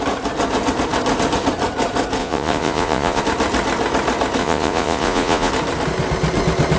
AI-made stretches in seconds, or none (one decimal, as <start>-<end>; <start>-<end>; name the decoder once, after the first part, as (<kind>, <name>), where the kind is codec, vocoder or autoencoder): 2.2-3.2 (vocoder, Vocos); 4.4-5.5